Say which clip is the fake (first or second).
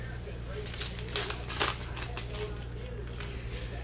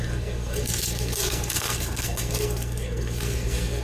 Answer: second